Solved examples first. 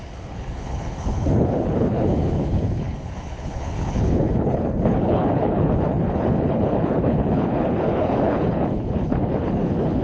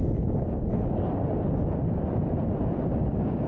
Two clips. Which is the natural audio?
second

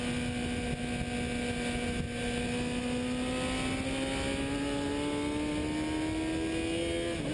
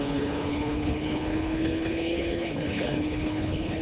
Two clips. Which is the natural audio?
first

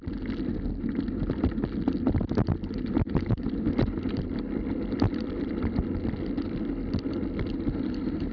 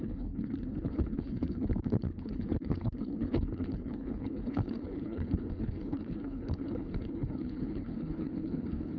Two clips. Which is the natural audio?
first